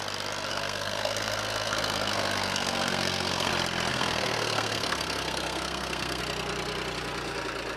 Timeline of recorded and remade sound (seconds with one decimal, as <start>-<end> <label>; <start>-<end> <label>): 0.0-0.5 recorded; 0.5-3.5 remade; 3.5-3.9 recorded; 3.9-6.2 remade; 6.2-7.8 recorded